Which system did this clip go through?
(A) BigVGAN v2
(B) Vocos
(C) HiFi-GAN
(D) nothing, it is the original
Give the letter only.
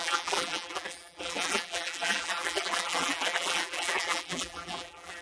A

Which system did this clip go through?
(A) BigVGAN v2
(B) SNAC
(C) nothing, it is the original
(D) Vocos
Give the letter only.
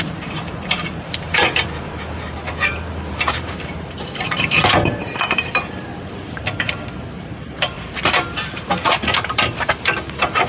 A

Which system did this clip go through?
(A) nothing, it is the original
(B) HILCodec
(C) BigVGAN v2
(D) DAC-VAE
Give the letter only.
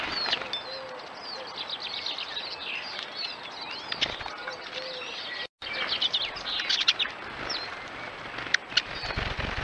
A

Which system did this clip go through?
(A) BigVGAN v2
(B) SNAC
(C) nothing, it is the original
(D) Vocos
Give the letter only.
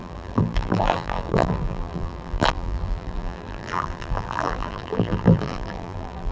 A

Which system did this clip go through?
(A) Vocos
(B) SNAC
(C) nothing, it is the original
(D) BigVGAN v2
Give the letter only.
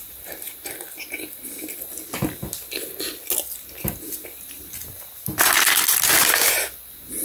C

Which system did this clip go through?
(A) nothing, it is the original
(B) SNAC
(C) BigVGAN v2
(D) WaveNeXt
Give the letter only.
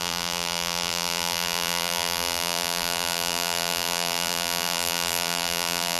C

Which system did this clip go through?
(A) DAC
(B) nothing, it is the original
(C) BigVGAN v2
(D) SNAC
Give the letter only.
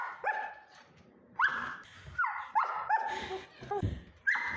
C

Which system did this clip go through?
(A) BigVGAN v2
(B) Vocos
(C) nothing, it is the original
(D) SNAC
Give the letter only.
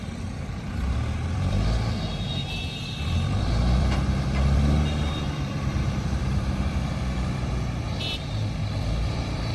A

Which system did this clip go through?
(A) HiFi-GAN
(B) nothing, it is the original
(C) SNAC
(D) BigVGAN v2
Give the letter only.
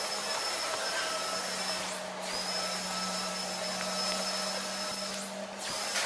B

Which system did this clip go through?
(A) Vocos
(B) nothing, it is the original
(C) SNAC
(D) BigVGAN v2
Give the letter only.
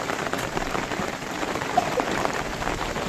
D